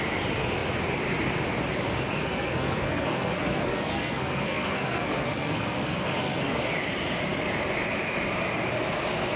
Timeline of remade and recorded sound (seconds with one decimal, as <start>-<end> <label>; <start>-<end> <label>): 0.0-2.2 recorded; 2.2-6.6 remade; 6.6-9.4 recorded